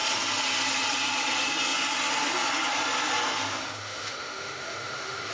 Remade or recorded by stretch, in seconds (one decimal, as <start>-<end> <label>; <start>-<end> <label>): 0.0-3.6 recorded; 3.6-5.3 remade